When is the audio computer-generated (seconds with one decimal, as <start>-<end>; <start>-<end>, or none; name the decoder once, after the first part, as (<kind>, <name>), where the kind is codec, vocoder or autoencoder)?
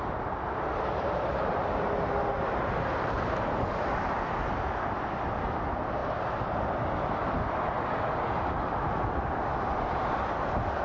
none